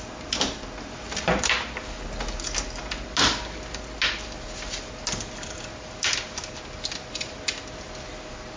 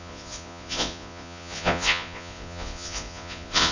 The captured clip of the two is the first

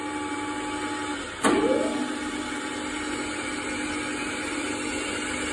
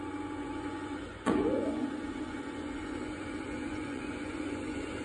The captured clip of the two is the first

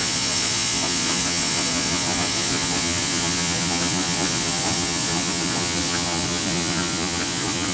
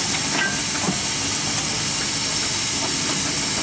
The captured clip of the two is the second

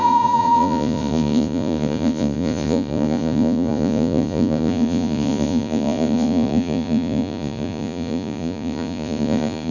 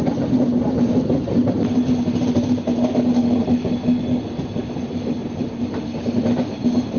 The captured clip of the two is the second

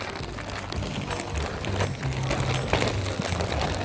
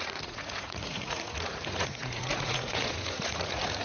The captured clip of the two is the first